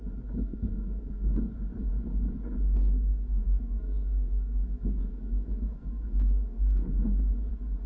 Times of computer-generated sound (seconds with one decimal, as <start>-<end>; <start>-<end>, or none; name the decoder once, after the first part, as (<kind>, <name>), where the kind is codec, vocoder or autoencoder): 0.5-1.3 (codec, SNAC); 2.8-7.5